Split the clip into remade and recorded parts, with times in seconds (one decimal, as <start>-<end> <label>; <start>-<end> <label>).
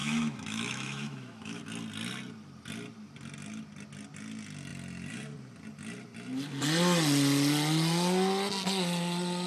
0.0-1.6 remade; 1.6-9.5 recorded